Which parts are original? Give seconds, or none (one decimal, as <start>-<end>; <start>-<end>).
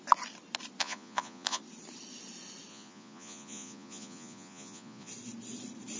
0.0-0.8; 1.6-2.7; 5.1-6.0